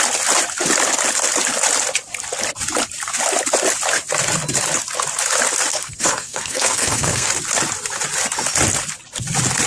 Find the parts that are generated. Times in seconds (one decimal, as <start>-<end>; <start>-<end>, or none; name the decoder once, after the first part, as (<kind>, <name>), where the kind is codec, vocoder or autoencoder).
5.7-7.3 (codec, SNAC)